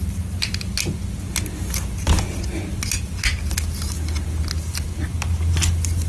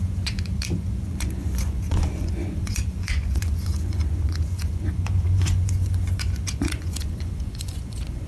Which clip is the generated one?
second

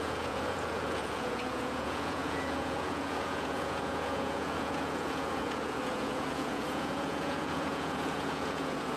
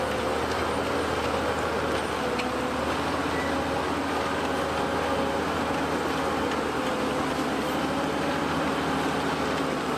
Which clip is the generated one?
first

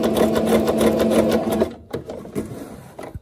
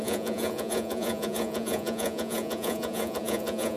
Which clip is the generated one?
second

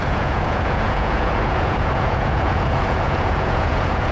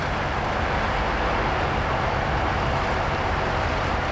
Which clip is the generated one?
first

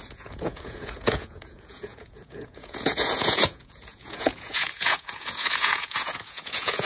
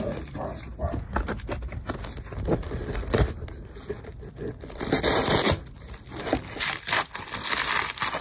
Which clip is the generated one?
first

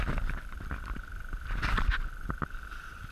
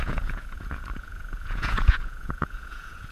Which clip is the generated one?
second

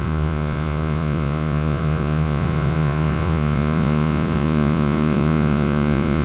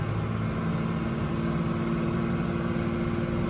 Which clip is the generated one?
first